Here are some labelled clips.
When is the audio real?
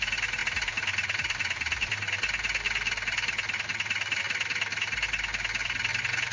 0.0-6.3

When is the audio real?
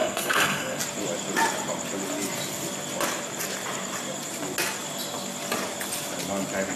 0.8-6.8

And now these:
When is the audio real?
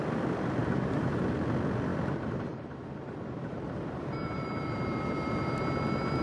0.0-0.6; 1.2-1.9; 5.6-6.2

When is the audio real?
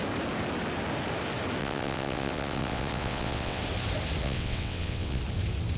0.0-1.6; 3.6-4.2; 5.2-5.8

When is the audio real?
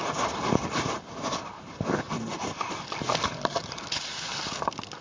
0.0-5.0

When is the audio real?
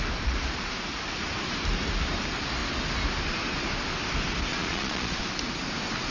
0.0-4.5; 5.2-6.1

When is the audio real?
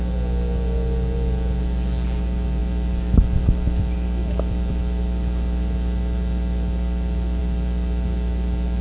0.0-8.8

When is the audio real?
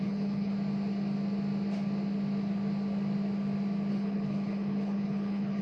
0.5-3.9